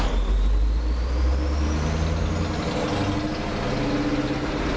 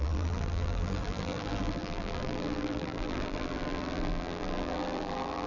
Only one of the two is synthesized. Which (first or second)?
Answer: second